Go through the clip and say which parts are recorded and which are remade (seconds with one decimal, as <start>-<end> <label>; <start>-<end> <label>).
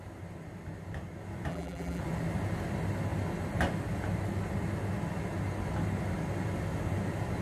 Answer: 0.0-1.5 recorded; 1.5-2.0 remade; 2.0-7.4 recorded